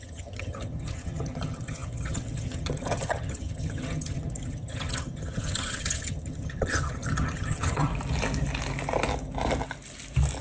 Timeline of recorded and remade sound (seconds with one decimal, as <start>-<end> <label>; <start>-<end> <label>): 0.0-7.9 remade; 7.9-10.4 recorded